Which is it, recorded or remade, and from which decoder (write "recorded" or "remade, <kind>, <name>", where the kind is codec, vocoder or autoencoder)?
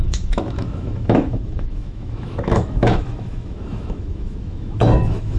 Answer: remade, autoencoder, DAC-VAE